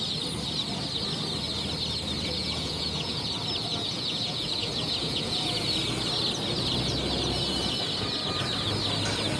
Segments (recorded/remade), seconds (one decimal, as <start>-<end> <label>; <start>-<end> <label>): 0.0-2.4 recorded; 2.4-3.3 remade; 3.3-3.7 recorded; 3.7-5.6 remade; 5.6-9.4 recorded